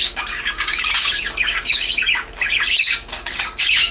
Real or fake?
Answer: fake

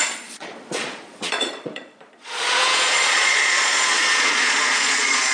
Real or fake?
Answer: fake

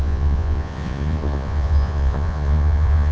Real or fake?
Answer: fake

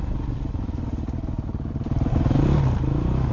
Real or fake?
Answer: real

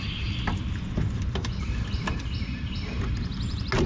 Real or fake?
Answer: real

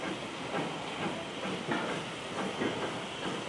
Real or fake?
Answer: real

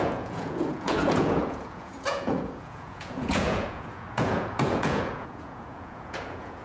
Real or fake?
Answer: fake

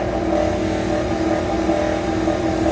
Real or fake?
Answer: real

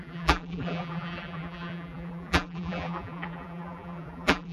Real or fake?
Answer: fake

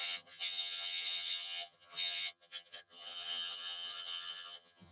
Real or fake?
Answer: fake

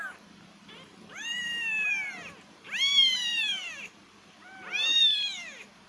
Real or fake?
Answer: fake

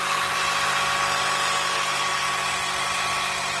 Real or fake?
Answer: real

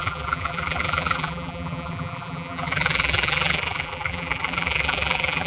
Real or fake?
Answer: fake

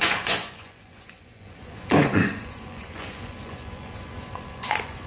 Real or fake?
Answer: fake